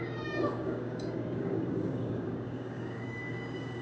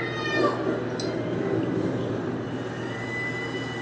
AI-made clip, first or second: first